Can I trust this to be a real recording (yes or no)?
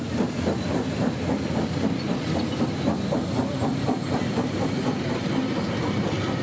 yes